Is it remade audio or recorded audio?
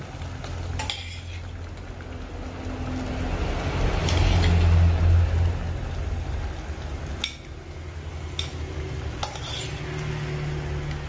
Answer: recorded